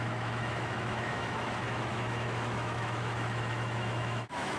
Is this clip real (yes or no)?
no